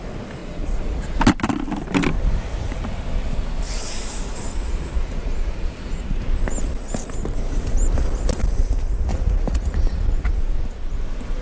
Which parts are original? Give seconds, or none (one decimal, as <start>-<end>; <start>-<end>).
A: 0.0-0.4; 1.2-4.5; 6.2-9.1; 10.3-11.4